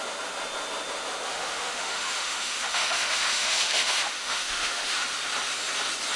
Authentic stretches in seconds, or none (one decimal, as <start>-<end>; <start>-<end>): 0.0-1.3; 5.0-6.2